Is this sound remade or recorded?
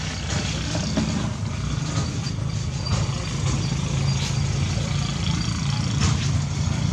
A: recorded